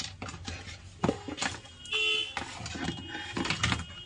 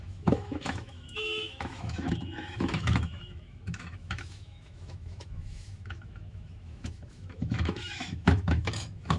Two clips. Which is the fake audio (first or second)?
second